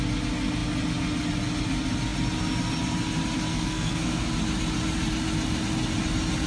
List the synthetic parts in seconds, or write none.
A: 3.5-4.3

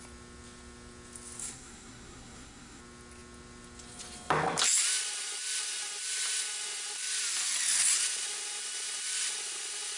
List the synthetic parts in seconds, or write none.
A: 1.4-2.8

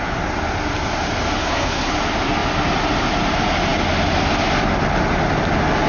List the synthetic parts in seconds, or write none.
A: 1.4-1.9

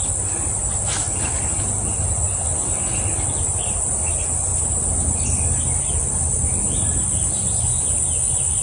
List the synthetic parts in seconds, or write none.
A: none

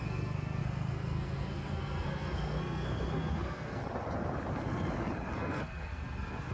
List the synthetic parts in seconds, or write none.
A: 0.0-3.8; 5.3-6.5

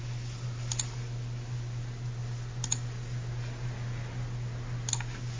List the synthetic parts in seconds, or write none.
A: none

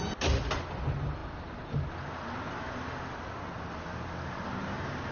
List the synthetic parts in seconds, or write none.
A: none